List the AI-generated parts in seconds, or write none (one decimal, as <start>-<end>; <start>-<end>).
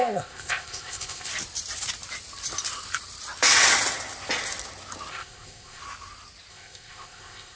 0.0-1.3; 5.1-5.8; 6.5-7.6